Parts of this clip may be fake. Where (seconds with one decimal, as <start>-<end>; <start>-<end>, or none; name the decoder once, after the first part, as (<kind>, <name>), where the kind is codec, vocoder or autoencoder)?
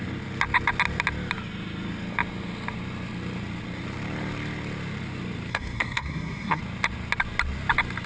5.5-6.6 (codec, SNAC)